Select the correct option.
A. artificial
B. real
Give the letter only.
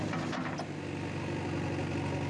B